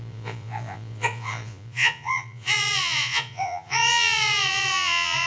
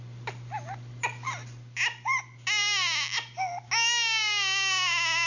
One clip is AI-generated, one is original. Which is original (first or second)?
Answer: second